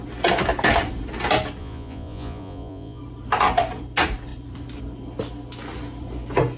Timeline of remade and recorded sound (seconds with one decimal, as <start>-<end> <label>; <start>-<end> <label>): 0.0-1.6 recorded; 1.6-3.0 remade; 3.0-6.6 recorded